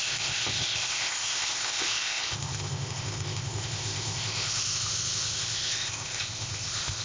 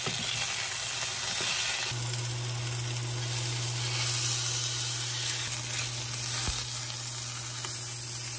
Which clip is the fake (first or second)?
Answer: first